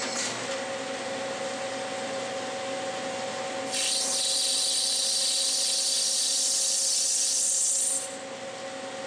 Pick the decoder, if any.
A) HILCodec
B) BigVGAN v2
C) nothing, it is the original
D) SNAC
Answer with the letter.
C